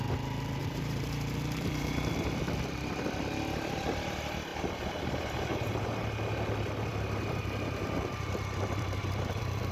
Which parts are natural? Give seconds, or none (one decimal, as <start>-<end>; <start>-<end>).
0.0-0.6; 2.3-4.5; 5.8-9.7

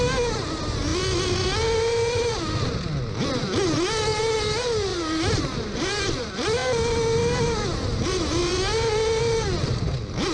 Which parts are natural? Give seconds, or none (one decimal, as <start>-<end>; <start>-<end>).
0.0-4.9; 5.4-10.3

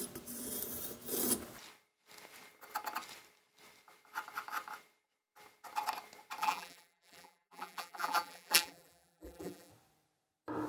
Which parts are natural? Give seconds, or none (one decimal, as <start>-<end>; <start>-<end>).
0.0-6.4; 9.7-10.7

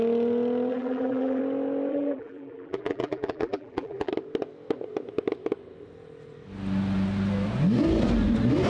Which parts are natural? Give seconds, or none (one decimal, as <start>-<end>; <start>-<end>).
0.0-0.7; 1.4-1.9; 4.1-8.7